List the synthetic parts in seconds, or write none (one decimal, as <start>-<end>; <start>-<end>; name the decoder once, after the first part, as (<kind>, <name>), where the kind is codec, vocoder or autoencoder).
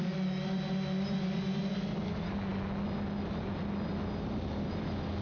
none